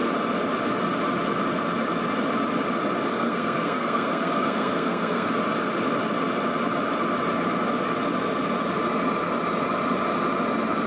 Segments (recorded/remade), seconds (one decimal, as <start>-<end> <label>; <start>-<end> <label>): 0.0-3.1 recorded; 3.1-5.3 remade; 5.3-10.9 recorded